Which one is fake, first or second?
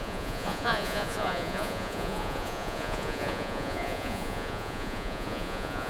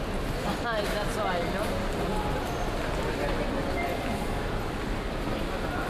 first